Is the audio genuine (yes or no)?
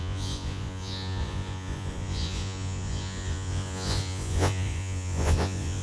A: no